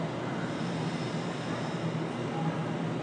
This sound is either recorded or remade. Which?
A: recorded